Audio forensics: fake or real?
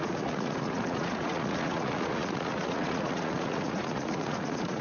fake